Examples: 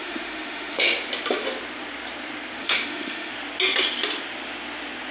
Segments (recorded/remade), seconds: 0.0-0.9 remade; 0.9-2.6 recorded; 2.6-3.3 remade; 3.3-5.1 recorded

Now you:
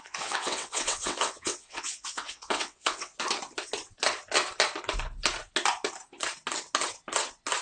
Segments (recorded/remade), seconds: 0.0-3.1 remade; 3.1-7.6 recorded